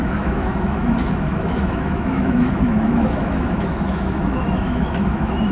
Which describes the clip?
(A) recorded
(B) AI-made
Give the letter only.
B